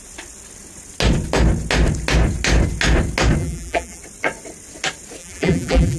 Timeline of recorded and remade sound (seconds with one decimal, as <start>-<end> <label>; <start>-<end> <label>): 0.0-3.4 recorded; 3.4-4.0 remade; 4.0-5.2 recorded; 5.2-6.0 remade